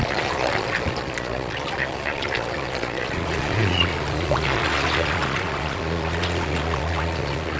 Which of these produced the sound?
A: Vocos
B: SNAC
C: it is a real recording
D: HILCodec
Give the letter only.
A